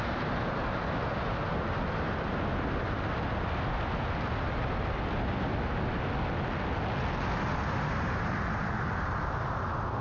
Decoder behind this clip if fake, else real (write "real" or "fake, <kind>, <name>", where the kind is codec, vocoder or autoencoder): real